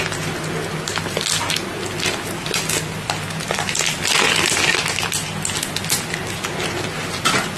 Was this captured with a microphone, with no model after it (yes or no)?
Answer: yes